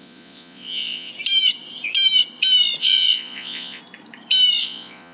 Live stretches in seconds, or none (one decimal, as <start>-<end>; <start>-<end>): 1.1-2.8; 3.8-4.6